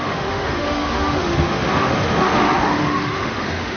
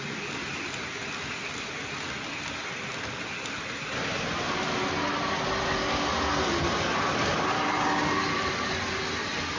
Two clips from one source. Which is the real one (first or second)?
second